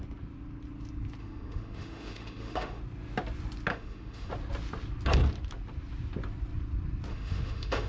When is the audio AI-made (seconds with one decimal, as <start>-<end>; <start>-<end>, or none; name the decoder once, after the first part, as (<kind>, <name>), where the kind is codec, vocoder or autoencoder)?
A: 1.2-2.8 (autoencoder, DAC-VAE); 3.7-4.3; 7.1-7.9